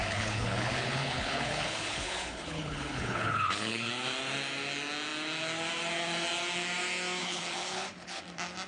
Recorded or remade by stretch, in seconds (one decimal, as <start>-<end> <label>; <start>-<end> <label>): 0.0-3.9 remade; 3.9-7.2 recorded; 7.2-8.2 remade; 8.2-8.7 recorded